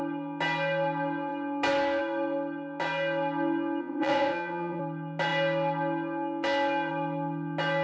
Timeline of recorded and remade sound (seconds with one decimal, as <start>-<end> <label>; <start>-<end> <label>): 0.0-3.8 recorded; 3.8-4.8 remade; 4.8-7.8 recorded